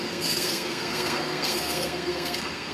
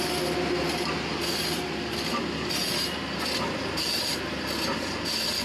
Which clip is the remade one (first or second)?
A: first